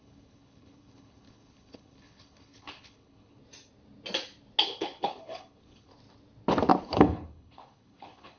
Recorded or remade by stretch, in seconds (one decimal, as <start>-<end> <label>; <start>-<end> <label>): 0.0-3.4 remade; 3.4-4.6 recorded; 4.6-5.9 remade; 5.9-6.8 recorded; 6.8-8.4 remade